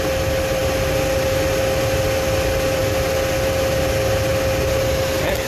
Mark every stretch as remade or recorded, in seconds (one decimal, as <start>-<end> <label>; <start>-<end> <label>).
0.0-5.5 recorded